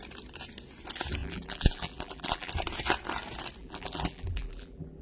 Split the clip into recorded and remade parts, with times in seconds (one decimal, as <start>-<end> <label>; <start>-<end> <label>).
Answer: 0.0-1.2 recorded; 1.2-2.5 remade; 2.5-3.6 recorded; 3.6-5.0 remade